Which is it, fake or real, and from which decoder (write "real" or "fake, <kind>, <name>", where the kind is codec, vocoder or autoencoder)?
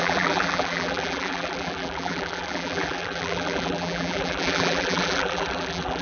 fake, vocoder, BigVGAN v2